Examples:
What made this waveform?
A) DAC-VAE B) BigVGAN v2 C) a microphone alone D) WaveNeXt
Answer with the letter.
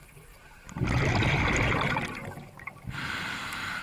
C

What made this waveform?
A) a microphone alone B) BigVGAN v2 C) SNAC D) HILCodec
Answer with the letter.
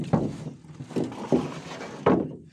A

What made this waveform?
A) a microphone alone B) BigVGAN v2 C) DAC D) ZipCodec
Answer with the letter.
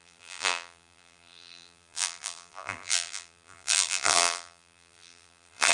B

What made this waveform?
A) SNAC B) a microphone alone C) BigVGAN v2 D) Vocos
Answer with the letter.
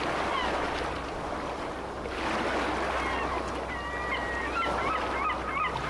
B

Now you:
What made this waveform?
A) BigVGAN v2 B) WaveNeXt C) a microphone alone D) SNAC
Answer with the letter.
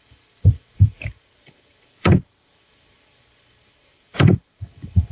A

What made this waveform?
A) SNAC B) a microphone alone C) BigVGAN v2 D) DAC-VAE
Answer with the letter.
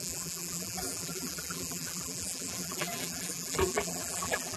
C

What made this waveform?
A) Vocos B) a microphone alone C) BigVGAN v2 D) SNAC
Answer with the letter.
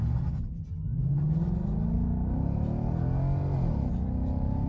B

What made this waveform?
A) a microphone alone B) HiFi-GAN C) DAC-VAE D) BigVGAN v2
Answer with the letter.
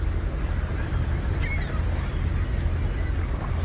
A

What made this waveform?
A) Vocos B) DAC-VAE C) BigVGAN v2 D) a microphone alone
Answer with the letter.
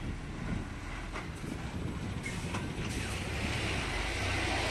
D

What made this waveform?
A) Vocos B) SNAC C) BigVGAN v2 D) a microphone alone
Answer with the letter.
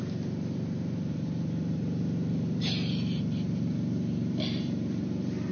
C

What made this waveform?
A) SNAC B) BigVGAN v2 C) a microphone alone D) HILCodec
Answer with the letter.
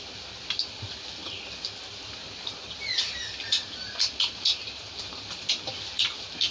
C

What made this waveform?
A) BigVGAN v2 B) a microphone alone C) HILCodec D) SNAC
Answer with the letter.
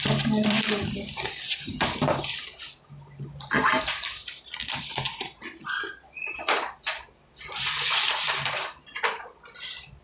A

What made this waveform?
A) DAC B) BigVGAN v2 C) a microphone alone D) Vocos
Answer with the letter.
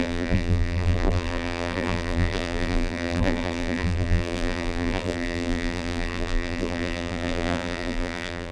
B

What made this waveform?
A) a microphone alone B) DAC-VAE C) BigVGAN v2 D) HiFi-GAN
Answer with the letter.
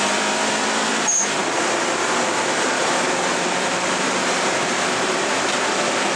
C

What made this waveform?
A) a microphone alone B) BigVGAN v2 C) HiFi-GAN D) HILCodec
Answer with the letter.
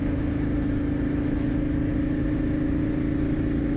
A